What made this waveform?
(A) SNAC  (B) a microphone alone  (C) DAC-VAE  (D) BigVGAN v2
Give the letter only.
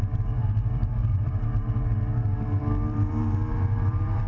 D